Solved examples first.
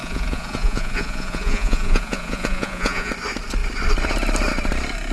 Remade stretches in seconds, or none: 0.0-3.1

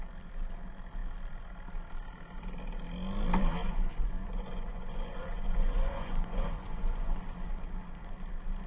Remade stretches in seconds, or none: 3.6-7.2

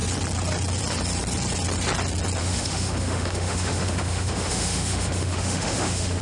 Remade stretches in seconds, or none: 2.4-6.2

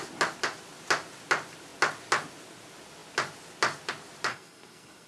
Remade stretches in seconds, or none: 4.3-5.1

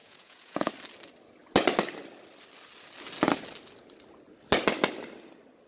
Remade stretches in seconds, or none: 0.0-0.7

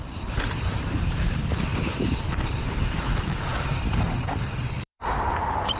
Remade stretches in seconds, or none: 0.0-5.0